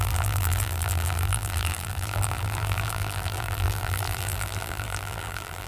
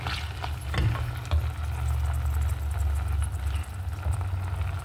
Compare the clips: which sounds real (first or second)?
second